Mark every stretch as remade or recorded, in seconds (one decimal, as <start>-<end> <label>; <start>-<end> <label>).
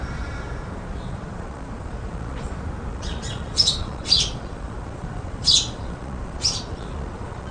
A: 0.0-0.9 recorded; 0.9-2.5 remade; 2.5-2.9 recorded; 2.9-7.5 remade